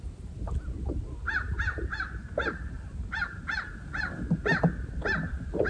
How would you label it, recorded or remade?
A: recorded